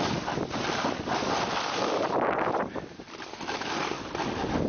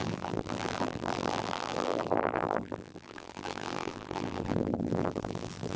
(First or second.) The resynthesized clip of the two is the second